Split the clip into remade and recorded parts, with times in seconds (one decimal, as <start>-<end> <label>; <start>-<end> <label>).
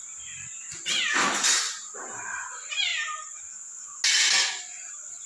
0.0-5.3 recorded